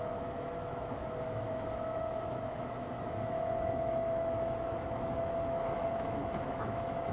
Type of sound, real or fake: fake